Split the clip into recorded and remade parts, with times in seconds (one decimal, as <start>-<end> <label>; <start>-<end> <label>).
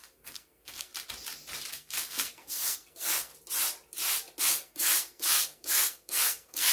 0.0-0.9 remade; 0.9-1.7 recorded; 1.7-3.3 remade; 3.3-4.4 recorded; 4.4-6.7 remade